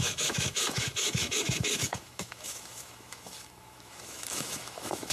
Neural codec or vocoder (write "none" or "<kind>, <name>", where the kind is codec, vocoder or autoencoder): autoencoder, DAC-VAE